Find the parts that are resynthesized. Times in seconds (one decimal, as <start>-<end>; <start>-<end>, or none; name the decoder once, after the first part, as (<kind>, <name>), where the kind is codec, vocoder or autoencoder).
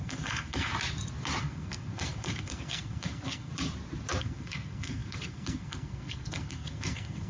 0.0-0.7 (codec, SNAC); 1.4-3.5; 4.2-7.3